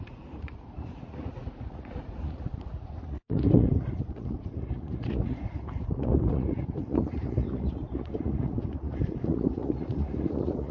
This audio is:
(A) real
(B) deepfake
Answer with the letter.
B